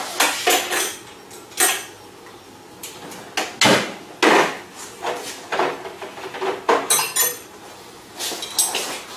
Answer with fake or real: real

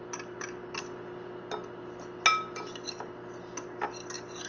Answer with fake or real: real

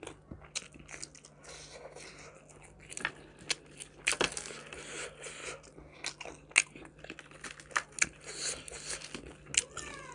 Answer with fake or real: real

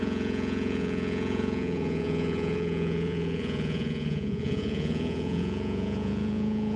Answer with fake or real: fake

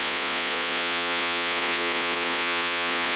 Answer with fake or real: fake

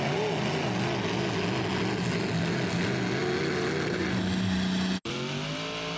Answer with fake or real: real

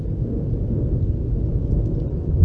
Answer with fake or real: real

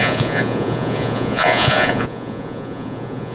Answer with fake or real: fake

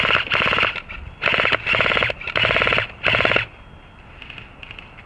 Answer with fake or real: real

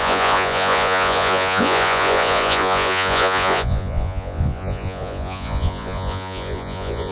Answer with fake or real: fake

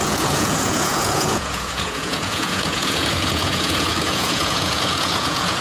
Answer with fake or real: fake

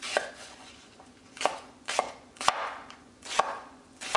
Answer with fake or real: fake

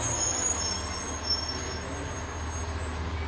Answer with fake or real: real